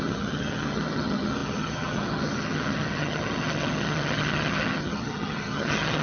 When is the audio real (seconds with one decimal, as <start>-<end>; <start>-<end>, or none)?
none